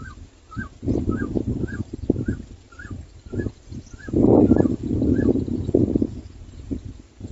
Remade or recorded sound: remade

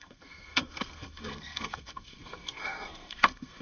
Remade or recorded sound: remade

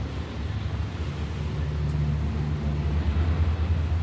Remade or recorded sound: recorded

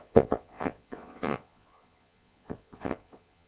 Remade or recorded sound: remade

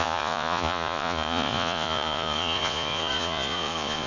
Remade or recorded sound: remade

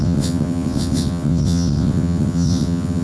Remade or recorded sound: remade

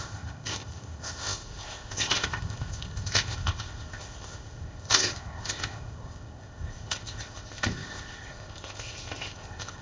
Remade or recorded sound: remade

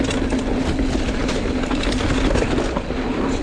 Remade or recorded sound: recorded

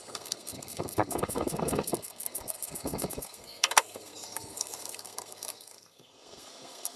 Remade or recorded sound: remade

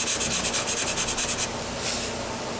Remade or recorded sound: recorded